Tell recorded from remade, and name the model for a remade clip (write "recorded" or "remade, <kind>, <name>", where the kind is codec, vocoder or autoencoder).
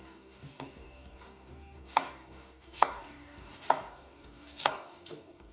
remade, codec, DAC